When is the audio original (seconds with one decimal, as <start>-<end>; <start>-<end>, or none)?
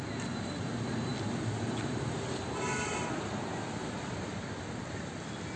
0.0-5.6